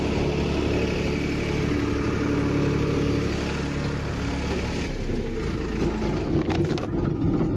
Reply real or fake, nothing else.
real